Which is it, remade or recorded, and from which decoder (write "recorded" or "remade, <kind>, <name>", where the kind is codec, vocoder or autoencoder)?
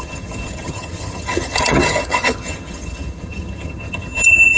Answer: remade, vocoder, HiFi-GAN